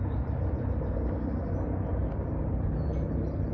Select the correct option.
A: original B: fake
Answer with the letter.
A